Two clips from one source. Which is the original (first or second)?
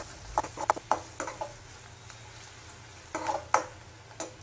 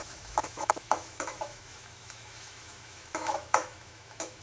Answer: first